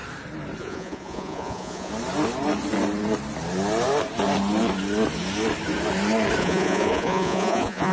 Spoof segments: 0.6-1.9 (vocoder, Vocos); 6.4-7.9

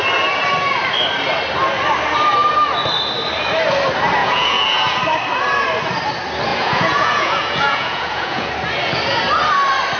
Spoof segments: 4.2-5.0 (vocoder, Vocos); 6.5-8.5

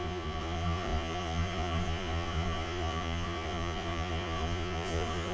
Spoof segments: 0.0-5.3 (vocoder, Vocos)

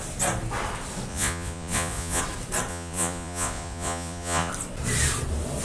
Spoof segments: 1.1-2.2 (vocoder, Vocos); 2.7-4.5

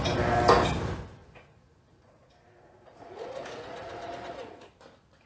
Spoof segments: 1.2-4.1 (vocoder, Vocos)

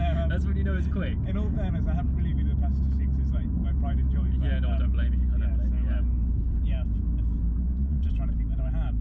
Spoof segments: 7.6-8.1 (vocoder, Vocos)